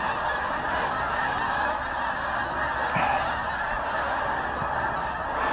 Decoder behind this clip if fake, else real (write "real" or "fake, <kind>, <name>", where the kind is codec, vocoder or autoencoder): real